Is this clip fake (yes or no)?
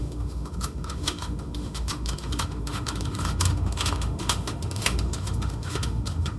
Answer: yes